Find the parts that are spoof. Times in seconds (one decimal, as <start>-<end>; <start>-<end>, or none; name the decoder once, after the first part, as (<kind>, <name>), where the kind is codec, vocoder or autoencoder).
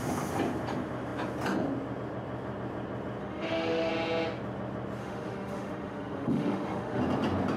3.2-3.9 (autoencoder, DAC-VAE); 5.0-7.0